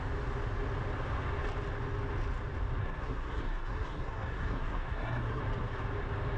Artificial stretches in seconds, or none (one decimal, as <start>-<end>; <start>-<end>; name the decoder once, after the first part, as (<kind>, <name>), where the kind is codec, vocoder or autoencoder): 2.8-5.4 (codec, SNAC)